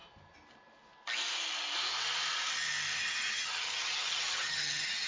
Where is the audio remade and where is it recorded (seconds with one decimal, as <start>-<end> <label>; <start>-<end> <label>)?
0.0-3.1 recorded; 3.1-5.1 remade